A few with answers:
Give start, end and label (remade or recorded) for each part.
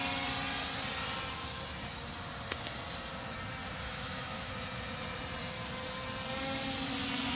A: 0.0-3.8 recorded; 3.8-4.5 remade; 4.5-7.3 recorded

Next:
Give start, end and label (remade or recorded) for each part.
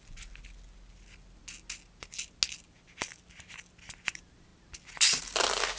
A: 0.0-5.8 recorded